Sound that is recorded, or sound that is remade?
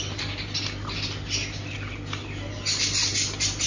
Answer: recorded